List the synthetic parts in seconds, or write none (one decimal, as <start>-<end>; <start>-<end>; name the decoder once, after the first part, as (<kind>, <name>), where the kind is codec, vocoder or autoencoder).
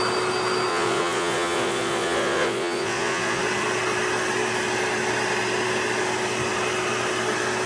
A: 0.7-3.4 (vocoder, Vocos)